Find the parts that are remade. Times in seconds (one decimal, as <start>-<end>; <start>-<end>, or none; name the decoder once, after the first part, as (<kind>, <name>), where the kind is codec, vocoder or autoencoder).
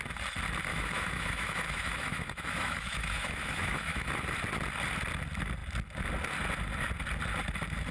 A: 0.7-4.1 (autoencoder, DAC-VAE)